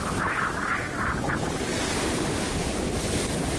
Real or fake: real